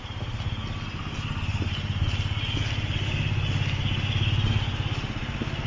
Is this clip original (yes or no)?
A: yes